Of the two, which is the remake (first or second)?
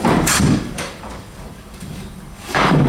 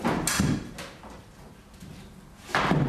first